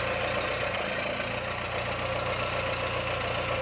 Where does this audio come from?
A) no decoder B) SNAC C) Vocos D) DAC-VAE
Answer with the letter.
A